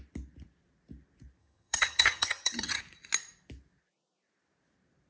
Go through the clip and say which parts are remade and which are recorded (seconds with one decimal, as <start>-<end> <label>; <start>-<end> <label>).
0.0-1.4 recorded; 1.4-2.8 remade; 2.8-5.1 recorded